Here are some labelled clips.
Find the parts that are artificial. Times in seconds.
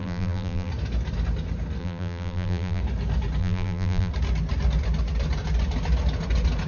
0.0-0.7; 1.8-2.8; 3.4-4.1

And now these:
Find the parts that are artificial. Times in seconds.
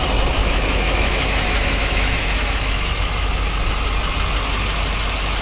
0.4-3.3